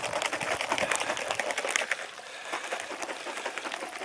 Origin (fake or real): real